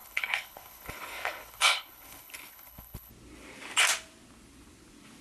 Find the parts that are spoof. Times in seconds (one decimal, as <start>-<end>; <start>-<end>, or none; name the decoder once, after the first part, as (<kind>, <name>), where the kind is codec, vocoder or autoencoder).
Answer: 0.0-3.1 (codec, HILCodec)